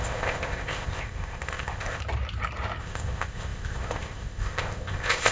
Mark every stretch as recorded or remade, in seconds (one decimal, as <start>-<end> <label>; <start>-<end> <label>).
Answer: 0.0-2.0 remade; 2.0-2.8 recorded; 2.8-5.3 remade